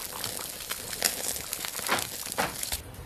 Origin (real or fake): real